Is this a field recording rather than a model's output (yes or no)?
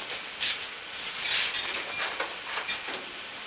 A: yes